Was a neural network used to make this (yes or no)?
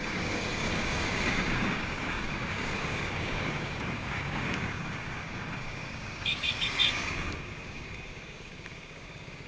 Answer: yes